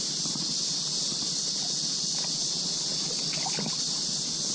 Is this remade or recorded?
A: recorded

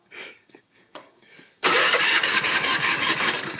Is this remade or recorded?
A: remade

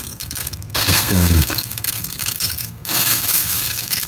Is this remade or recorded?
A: remade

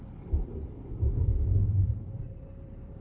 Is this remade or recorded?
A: remade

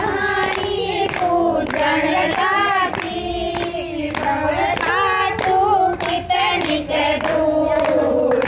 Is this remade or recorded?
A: recorded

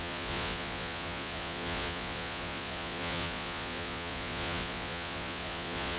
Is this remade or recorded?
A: remade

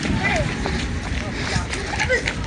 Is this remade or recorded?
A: recorded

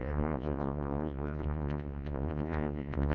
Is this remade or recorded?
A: remade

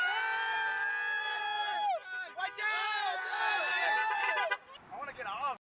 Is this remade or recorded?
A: recorded